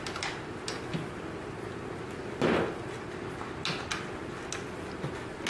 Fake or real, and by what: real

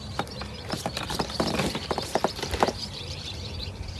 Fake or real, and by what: fake, vocoder, BigVGAN v2